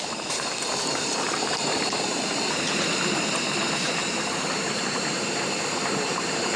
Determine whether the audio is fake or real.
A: fake